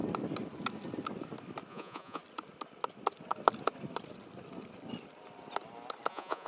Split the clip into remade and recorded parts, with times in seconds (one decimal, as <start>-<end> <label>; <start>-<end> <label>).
0.0-1.7 recorded; 1.7-2.2 remade; 2.2-6.1 recorded; 6.1-6.5 remade